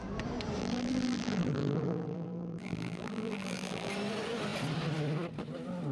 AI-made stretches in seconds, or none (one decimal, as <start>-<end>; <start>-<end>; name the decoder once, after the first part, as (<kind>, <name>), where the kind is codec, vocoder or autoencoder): 0.6-3.9 (vocoder, BigVGAN v2)